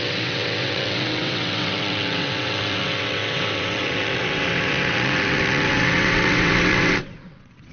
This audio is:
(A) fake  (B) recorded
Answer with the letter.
A